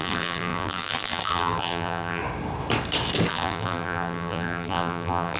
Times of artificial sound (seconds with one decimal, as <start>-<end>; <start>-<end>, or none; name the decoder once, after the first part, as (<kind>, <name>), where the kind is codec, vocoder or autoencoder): 0.0-2.2 (vocoder, BigVGAN v2); 3.3-5.4

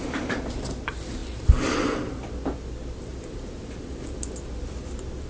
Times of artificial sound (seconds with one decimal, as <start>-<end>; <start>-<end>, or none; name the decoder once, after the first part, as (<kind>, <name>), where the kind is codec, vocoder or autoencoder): 0.0-3.1 (vocoder, BigVGAN v2); 4.7-5.3